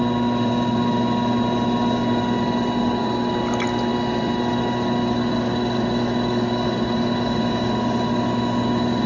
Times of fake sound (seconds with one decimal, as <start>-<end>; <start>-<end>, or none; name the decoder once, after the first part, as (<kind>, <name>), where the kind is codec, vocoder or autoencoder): none